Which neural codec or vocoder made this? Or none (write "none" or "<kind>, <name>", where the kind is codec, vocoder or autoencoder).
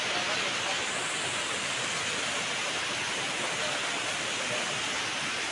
none